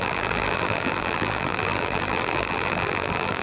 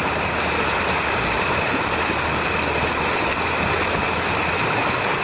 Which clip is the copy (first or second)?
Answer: first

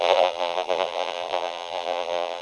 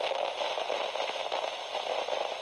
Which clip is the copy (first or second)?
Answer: first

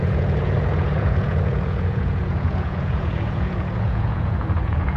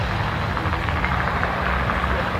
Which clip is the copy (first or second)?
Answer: first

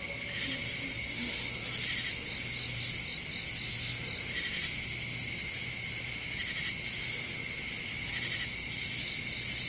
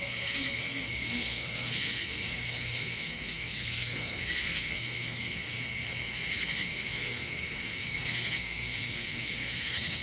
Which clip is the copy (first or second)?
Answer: second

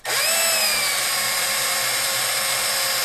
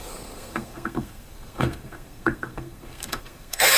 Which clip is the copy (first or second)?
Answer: second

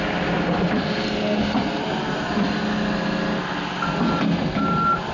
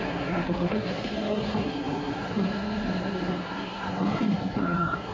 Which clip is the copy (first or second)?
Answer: second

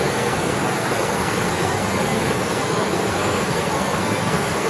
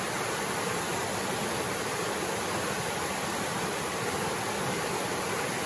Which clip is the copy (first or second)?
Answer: first